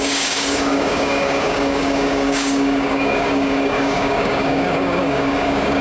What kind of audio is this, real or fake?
fake